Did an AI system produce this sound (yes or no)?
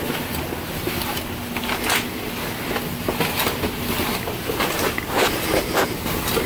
no